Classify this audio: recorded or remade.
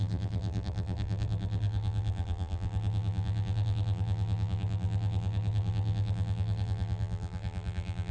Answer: remade